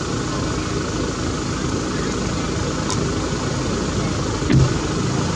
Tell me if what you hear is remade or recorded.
recorded